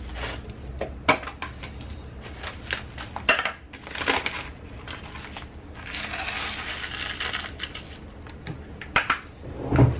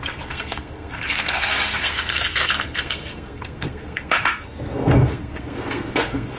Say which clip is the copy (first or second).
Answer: second